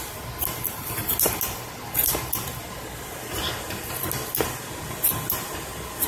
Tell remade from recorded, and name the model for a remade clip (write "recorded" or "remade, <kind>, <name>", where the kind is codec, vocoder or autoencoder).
recorded